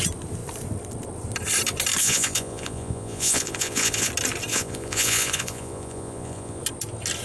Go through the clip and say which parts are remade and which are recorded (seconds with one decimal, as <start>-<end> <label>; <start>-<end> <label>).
0.0-2.0 recorded; 2.0-4.1 remade; 4.1-4.5 recorded; 4.5-6.6 remade; 6.6-7.2 recorded

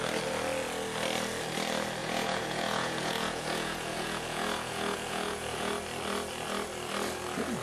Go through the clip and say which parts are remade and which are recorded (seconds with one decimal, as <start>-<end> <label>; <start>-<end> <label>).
0.0-2.0 recorded; 2.0-5.7 remade; 5.7-7.6 recorded